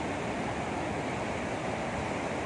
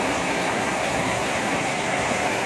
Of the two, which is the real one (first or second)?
first